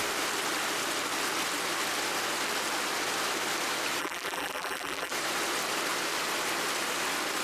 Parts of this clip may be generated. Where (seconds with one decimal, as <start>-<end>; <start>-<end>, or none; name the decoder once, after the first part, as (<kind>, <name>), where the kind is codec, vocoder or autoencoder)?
4.0-5.1 (vocoder, BigVGAN v2)